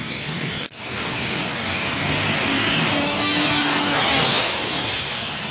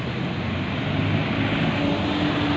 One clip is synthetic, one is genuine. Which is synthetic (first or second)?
first